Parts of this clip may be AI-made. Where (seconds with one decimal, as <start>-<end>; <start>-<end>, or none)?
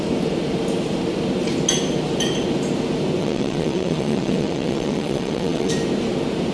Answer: 3.2-5.7